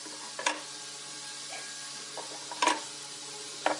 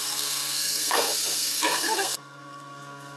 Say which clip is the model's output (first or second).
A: second